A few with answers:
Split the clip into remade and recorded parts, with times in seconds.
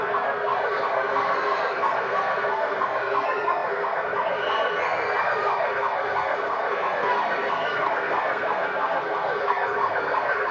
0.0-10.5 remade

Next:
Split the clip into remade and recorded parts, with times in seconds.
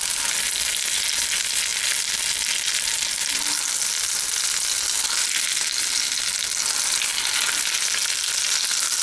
0.0-9.0 recorded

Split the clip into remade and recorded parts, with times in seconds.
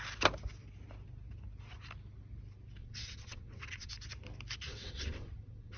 0.0-2.8 recorded; 2.8-3.9 remade; 3.9-4.7 recorded; 4.7-5.8 remade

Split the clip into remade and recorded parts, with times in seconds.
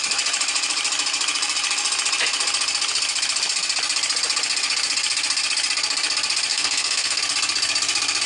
0.0-6.5 recorded; 6.5-7.2 remade; 7.2-8.3 recorded